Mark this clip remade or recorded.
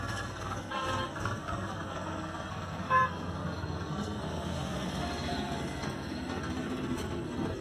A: remade